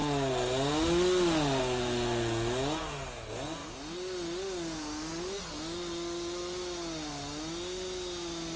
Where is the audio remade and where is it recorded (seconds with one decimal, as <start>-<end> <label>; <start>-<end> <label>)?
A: 0.0-8.6 recorded